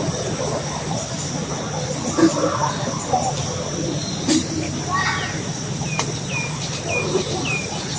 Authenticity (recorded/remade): recorded